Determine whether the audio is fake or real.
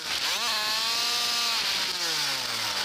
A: real